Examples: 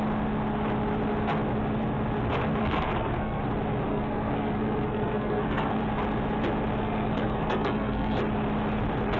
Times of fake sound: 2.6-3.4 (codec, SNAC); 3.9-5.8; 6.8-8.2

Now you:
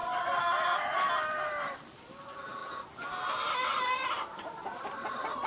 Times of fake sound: 3.7-5.5 (vocoder, BigVGAN v2)

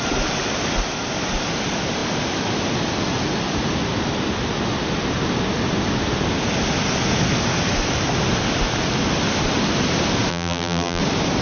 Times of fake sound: 10.3-11.0 (vocoder, BigVGAN v2)

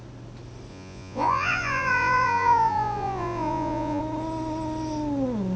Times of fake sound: 0.7-4.0 (vocoder, Vocos)